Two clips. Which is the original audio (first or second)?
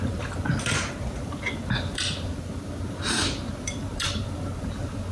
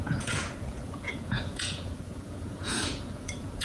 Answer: first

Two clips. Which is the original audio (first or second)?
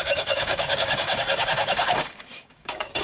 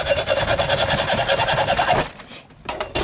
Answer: second